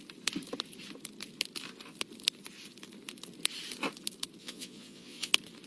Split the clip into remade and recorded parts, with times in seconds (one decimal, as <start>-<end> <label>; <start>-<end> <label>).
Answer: 0.0-4.4 recorded; 4.4-5.3 remade; 5.3-5.7 recorded